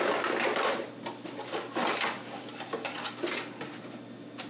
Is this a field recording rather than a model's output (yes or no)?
yes